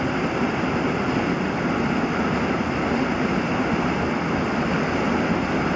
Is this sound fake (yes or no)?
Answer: no